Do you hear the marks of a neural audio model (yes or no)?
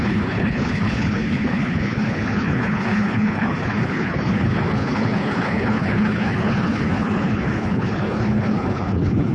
yes